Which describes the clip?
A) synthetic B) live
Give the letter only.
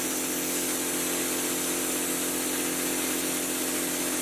B